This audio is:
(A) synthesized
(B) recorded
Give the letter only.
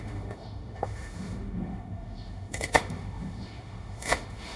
A